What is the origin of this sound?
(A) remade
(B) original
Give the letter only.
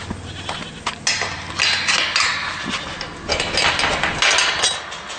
B